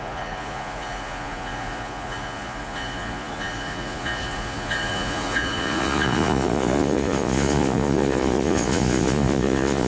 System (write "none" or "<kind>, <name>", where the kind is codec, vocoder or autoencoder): vocoder, Vocos